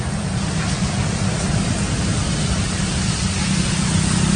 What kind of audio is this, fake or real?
real